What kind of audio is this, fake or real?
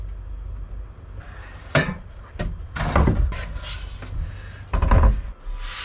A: real